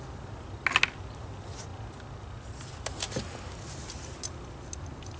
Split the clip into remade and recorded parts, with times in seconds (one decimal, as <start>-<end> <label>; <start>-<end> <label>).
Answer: 0.0-5.2 recorded